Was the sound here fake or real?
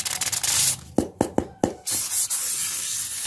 real